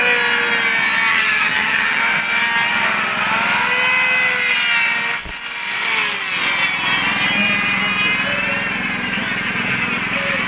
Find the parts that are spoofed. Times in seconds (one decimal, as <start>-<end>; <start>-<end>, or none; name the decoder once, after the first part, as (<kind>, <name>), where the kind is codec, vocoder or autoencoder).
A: 1.1-2.0 (vocoder, HiFi-GAN)